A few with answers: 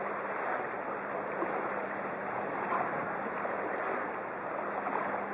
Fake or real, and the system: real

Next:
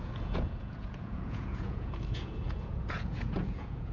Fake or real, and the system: fake, vocoder, Vocos